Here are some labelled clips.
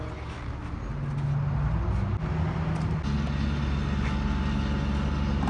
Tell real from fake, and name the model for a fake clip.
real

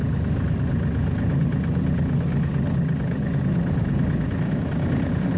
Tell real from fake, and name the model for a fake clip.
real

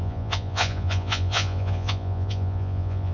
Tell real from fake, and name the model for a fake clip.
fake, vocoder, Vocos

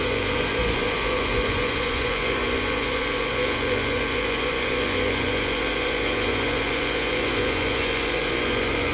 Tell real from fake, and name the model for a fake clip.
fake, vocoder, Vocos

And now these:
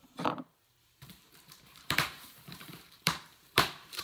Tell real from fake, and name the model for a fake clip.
fake, vocoder, BigVGAN v2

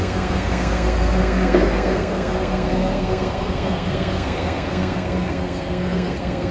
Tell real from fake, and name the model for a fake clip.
fake, codec, SNAC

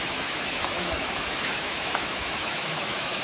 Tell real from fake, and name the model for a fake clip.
fake, autoencoder, DAC-VAE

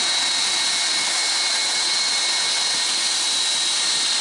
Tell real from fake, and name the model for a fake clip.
real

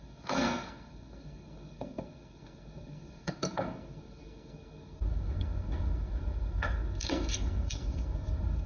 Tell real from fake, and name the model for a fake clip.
fake, codec, SNAC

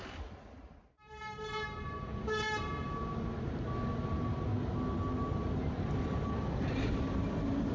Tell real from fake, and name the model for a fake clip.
real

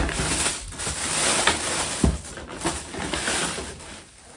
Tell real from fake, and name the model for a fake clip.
real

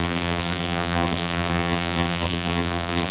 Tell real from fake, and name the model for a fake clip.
fake, vocoder, BigVGAN v2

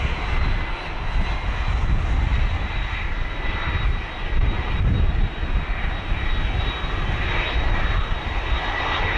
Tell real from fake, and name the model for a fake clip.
real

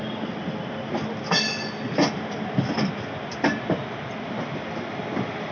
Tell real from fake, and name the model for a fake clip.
real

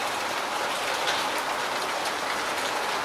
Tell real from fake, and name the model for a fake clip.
real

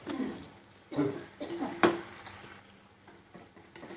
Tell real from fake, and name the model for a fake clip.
fake, vocoder, BigVGAN v2